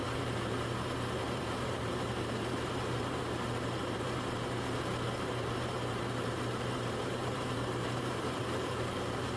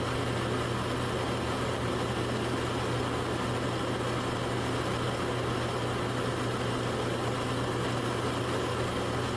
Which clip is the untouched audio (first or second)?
second